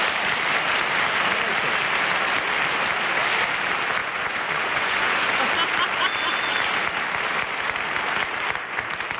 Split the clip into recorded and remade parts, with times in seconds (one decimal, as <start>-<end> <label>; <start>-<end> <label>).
0.0-4.0 recorded; 4.0-5.4 remade; 5.4-9.2 recorded